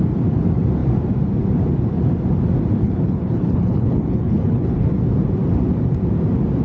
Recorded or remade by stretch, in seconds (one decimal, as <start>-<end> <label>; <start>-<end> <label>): 0.0-2.8 recorded; 2.8-4.9 remade; 4.9-6.6 recorded